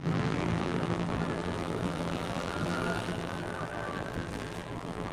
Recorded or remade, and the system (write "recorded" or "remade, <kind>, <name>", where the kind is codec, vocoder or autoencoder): remade, vocoder, BigVGAN v2